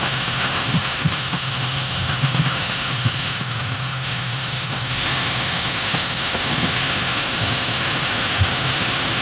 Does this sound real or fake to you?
fake